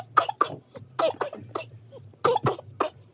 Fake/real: real